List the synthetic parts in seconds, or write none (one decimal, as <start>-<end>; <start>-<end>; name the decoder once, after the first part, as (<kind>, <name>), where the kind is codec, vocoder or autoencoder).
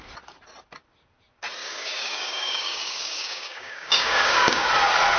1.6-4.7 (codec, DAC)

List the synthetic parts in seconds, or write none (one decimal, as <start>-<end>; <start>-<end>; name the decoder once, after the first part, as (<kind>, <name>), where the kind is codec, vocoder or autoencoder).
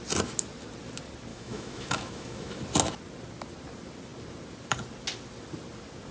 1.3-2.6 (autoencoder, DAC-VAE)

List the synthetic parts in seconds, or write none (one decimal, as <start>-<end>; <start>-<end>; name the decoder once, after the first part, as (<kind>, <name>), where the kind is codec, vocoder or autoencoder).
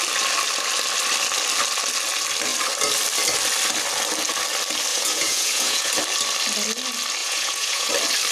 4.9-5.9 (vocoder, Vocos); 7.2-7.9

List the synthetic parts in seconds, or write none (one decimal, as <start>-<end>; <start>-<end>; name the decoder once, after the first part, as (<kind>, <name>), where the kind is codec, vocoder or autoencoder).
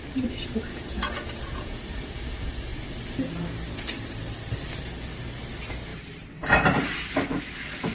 0.7-2.2 (vocoder, Vocos)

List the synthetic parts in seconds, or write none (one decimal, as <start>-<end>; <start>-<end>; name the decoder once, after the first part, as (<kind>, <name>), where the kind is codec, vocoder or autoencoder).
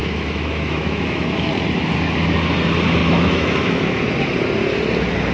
0.0-1.5 (autoencoder, DAC-VAE); 3.0-4.0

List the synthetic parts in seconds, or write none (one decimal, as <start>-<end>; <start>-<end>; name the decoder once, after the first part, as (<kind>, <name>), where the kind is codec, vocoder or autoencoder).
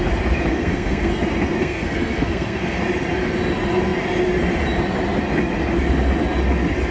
0.5-1.1 (codec, SNAC); 1.6-2.8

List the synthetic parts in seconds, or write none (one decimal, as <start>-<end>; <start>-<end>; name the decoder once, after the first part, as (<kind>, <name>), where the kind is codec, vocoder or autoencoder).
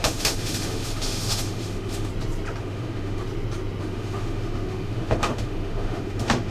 0.0-2.1 (autoencoder, DAC-VAE); 2.6-3.2; 3.8-6.5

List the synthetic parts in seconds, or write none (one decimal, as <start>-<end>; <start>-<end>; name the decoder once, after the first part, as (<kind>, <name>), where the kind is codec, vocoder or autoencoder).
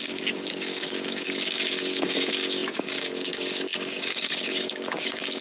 0.0-5.4 (codec, DAC)